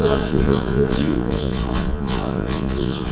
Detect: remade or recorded remade